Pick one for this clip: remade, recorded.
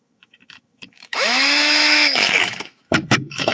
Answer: remade